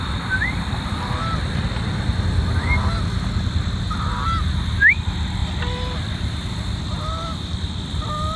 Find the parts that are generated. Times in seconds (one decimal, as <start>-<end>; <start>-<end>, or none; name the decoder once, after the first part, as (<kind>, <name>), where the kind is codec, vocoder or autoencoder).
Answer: none